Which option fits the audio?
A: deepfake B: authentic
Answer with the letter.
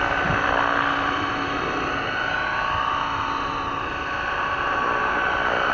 B